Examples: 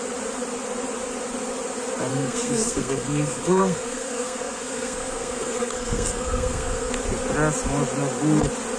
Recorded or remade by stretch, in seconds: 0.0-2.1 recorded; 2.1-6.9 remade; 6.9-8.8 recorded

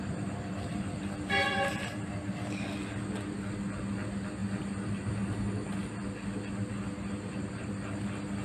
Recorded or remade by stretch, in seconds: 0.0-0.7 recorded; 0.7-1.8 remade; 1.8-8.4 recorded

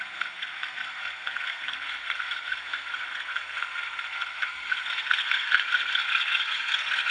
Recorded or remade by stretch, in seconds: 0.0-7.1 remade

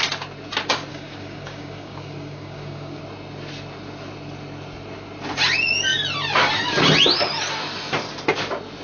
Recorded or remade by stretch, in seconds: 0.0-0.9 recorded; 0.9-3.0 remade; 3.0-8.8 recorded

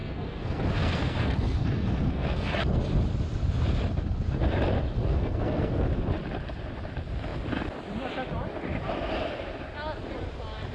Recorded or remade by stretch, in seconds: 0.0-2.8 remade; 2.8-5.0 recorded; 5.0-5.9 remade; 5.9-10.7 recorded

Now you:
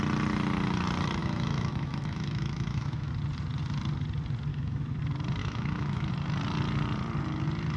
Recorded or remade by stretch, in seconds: 0.0-1.2 recorded; 1.2-3.1 remade; 3.1-4.5 recorded; 4.5-5.0 remade; 5.0-5.4 recorded; 5.4-6.1 remade; 6.1-7.8 recorded

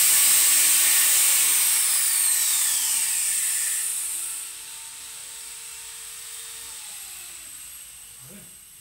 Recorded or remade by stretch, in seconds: 0.0-5.2 recorded; 5.2-6.4 remade; 6.4-8.8 recorded

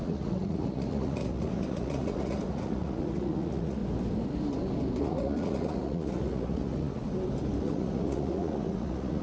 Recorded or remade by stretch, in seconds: 0.0-3.8 remade; 3.8-5.0 recorded; 5.0-7.0 remade; 7.0-7.6 recorded; 7.6-9.2 remade